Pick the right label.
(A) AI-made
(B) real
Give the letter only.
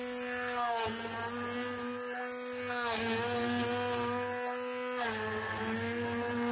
B